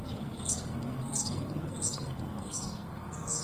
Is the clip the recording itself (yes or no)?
no